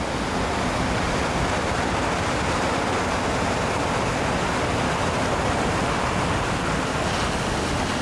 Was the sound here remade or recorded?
recorded